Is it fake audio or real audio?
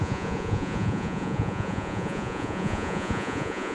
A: fake